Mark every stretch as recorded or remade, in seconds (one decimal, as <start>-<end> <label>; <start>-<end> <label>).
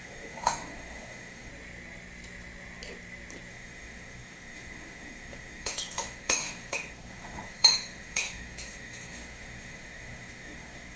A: 0.0-1.5 remade; 1.5-3.5 recorded; 3.5-11.0 remade